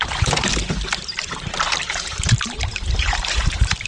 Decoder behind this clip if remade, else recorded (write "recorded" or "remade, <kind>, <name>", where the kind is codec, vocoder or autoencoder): remade, vocoder, BigVGAN v2